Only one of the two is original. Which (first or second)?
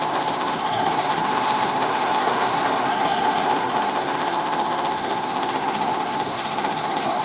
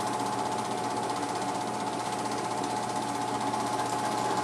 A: second